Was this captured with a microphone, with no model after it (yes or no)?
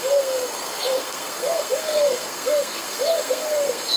no